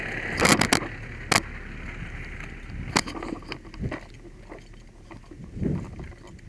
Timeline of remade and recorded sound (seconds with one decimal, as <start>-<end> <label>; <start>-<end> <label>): 0.0-6.5 recorded